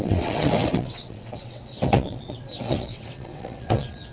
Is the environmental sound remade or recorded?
remade